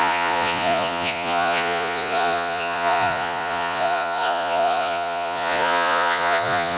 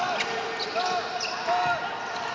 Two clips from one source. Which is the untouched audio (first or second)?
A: second